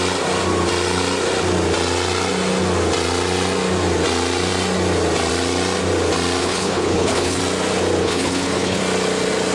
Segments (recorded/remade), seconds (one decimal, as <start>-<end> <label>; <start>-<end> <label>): 0.0-6.4 recorded; 6.4-7.4 remade; 7.4-8.0 recorded; 8.0-8.8 remade; 8.8-9.5 recorded